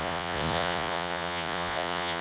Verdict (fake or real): fake